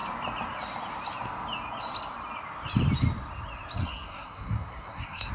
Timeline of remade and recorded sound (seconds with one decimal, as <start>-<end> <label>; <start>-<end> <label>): 0.0-3.8 recorded; 3.8-5.3 remade